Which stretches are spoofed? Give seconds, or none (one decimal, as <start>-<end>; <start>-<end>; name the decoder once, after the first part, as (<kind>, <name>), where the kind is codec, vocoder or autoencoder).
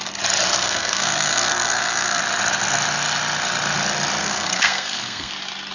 0.5-2.2 (codec, SNAC); 4.2-5.3